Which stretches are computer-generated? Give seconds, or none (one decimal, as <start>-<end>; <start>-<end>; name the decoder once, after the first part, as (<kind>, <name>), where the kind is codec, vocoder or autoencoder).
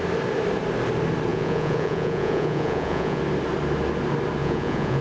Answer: 1.3-3.2 (vocoder, Vocos); 4.4-5.0